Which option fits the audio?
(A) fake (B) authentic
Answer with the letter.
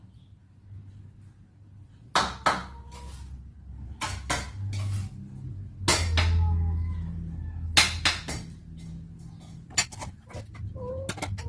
B